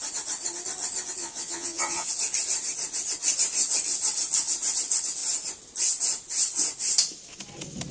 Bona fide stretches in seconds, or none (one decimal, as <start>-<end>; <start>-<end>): 0.0-1.2; 2.1-7.9